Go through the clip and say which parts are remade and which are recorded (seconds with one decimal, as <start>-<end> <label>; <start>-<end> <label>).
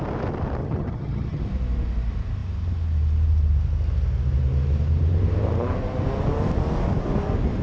0.0-0.6 recorded; 0.6-1.4 remade; 1.4-7.6 recorded